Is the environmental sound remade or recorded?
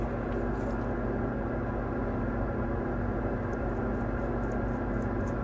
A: recorded